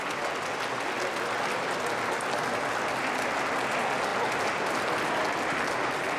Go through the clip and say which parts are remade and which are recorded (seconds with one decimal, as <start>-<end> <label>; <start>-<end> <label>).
0.0-6.2 recorded